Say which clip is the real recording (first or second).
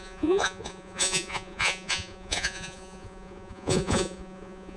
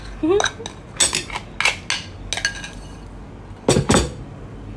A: second